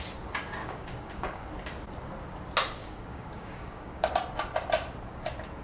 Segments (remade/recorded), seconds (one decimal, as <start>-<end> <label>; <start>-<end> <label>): 0.0-0.6 recorded; 0.6-1.5 remade; 1.5-2.8 recorded; 2.8-4.1 remade; 4.1-5.6 recorded